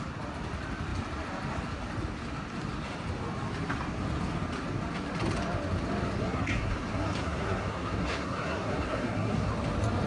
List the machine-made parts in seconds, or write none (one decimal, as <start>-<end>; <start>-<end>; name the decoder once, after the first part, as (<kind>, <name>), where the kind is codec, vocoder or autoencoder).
6.2-9.5 (codec, SNAC)